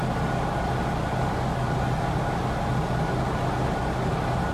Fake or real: real